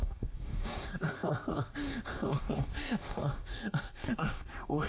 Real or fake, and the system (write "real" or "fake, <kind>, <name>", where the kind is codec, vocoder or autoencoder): fake, codec, DAC